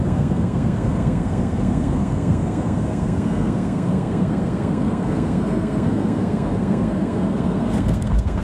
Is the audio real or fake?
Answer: fake